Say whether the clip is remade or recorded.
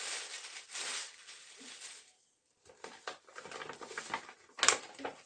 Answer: recorded